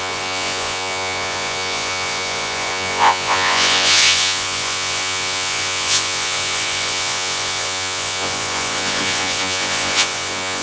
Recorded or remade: remade